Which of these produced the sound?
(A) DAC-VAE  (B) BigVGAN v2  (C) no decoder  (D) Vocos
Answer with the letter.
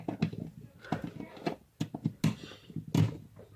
C